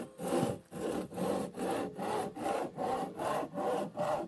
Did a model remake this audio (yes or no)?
no